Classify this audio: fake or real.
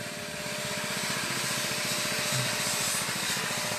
real